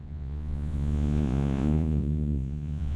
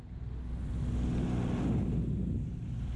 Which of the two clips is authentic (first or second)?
second